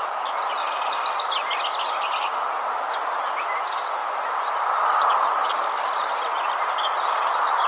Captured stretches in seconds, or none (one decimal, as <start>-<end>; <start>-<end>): 0.0-7.7